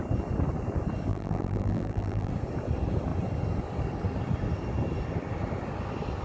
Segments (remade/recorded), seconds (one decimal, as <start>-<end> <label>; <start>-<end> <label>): 0.0-1.1 recorded; 1.1-2.3 remade; 2.3-6.2 recorded